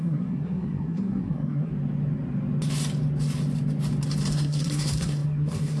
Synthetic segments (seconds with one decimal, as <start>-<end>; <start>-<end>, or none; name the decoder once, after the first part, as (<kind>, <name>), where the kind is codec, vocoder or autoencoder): 0.0-1.7 (codec, SNAC); 4.3-5.8